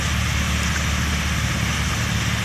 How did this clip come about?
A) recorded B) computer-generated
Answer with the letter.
A